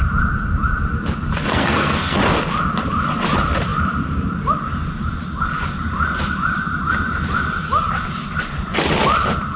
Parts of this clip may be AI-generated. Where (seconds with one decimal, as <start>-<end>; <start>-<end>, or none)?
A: 1.5-2.2